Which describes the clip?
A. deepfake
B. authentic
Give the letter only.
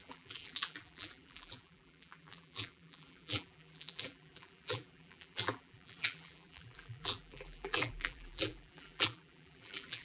A